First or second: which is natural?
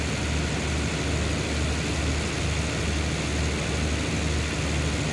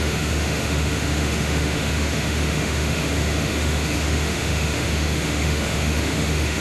first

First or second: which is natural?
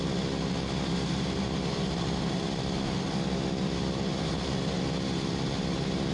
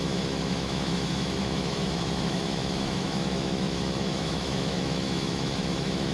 first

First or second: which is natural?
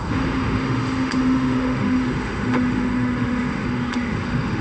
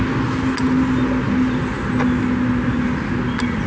second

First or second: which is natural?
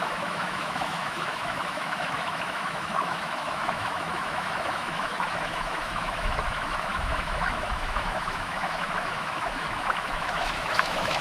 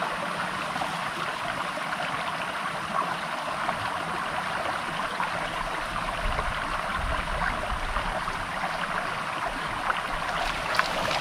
second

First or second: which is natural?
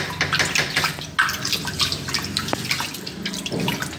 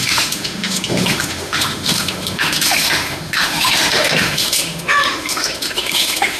first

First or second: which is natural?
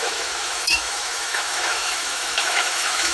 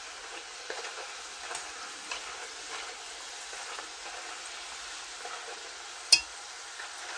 second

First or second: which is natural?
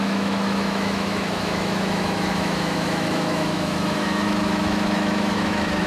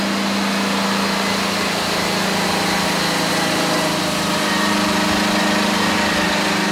second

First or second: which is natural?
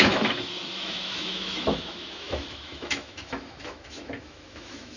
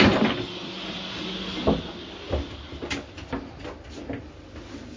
second